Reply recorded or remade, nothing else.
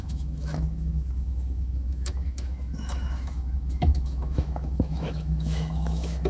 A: remade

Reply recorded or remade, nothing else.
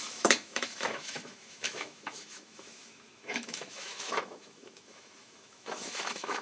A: remade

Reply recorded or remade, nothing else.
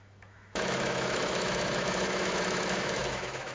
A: remade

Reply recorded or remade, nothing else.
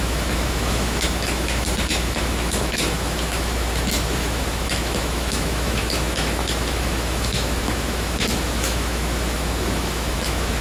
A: remade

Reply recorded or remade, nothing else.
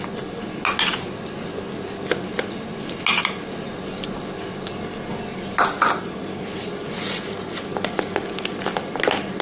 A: recorded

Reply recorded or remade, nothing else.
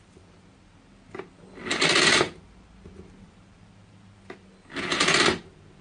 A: recorded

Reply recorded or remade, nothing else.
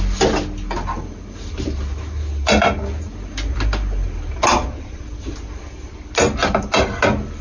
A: recorded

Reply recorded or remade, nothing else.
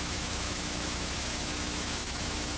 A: remade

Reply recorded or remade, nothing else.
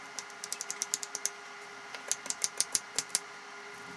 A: recorded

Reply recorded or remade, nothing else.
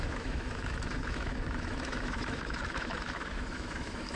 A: remade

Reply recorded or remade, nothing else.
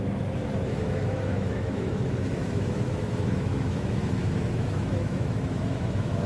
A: remade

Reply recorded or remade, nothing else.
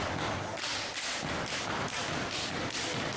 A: recorded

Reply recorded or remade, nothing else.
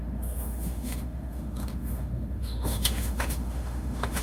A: remade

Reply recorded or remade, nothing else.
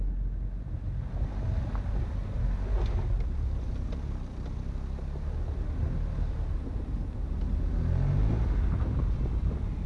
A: recorded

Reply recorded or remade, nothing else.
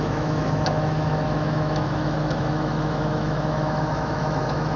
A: remade